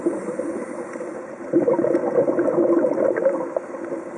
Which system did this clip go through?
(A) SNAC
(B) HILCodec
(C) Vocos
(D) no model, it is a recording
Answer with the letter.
D